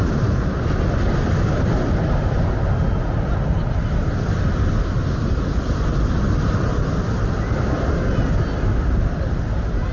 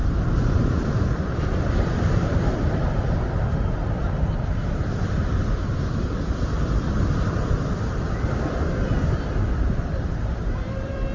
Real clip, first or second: first